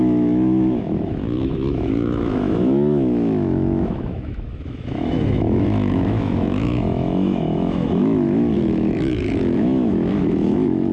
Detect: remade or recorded remade